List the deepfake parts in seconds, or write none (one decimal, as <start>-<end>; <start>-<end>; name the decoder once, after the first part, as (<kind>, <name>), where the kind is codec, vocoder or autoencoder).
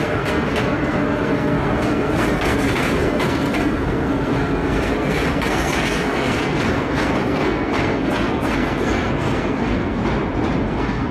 0.0-10.0 (codec, SNAC); 10.6-11.1